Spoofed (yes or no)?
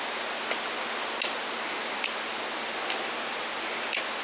no